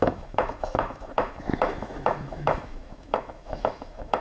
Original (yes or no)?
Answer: no